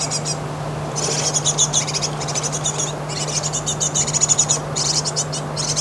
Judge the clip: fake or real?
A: real